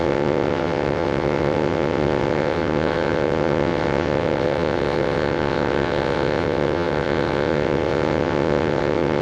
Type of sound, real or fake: fake